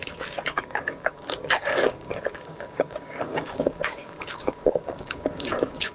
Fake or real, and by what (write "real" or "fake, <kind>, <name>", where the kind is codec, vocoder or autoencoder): fake, codec, DAC